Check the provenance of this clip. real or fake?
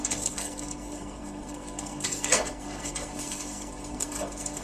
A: fake